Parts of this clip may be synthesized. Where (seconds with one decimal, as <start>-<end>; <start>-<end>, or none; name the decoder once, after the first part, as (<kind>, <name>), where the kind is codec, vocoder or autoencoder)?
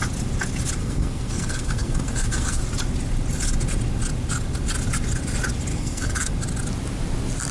0.8-2.6 (codec, SNAC); 5.7-6.3